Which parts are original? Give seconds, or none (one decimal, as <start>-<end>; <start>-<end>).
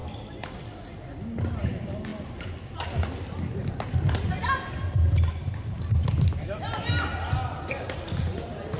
0.0-8.8